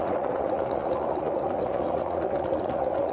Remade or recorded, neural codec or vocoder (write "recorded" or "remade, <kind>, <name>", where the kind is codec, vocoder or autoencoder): remade, vocoder, Vocos